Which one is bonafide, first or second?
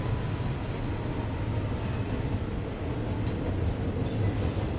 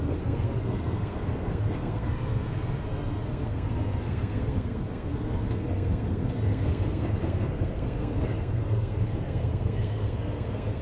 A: first